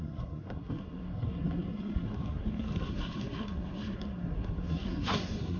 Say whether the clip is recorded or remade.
remade